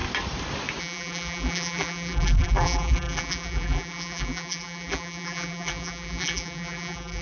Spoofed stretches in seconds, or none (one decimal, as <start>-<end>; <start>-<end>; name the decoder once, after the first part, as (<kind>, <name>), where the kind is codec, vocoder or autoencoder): 0.8-7.2 (vocoder, BigVGAN v2)